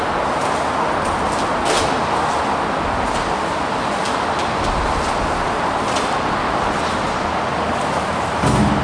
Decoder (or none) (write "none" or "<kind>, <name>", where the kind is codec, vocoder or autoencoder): none